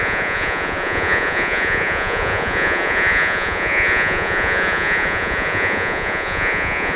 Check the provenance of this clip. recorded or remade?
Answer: remade